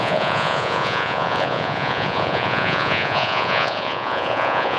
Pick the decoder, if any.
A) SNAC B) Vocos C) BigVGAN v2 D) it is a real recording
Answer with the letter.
B